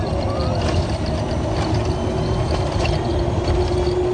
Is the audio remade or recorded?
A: recorded